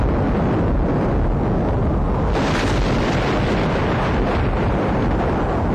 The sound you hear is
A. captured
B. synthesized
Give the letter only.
A